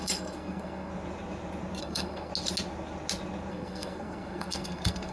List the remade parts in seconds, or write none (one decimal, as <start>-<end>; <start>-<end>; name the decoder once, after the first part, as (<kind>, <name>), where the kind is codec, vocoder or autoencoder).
0.0-0.9 (codec, SNAC); 1.8-2.3; 3.5-5.1